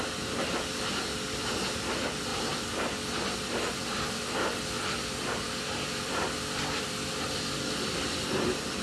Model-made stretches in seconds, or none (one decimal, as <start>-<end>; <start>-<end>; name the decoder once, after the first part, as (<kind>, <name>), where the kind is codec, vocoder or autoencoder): 0.0-2.3 (vocoder, BigVGAN v2); 3.7-4.4; 5.3-8.8